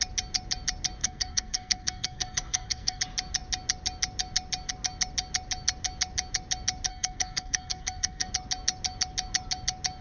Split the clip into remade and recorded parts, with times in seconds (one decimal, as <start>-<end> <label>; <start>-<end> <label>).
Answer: 0.0-1.0 recorded; 1.0-3.0 remade; 3.0-6.9 recorded; 6.9-8.3 remade; 8.3-10.0 recorded